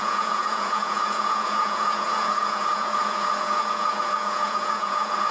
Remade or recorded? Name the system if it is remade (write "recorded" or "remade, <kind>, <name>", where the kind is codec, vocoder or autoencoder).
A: remade, vocoder, Vocos